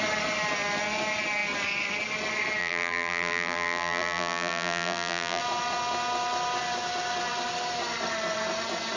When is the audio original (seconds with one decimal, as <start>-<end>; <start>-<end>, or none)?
0.0-2.6; 5.4-9.0